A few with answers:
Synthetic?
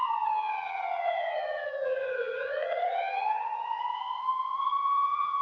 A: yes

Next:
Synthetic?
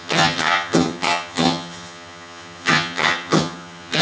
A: yes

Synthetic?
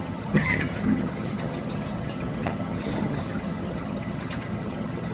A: yes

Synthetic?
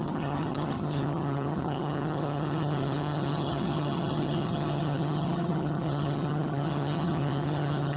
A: yes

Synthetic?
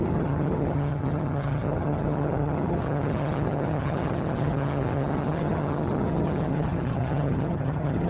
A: yes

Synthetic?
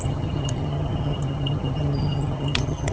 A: yes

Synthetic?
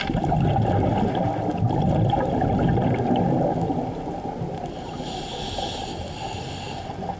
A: no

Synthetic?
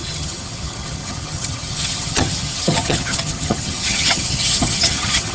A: yes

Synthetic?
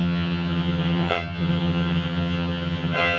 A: yes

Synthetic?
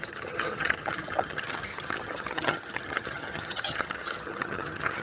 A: yes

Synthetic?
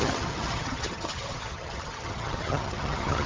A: yes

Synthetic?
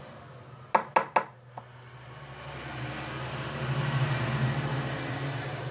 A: no